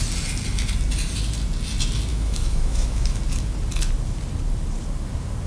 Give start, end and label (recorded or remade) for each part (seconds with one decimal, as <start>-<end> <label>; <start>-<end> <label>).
0.0-2.1 recorded; 2.1-3.2 remade; 3.2-5.5 recorded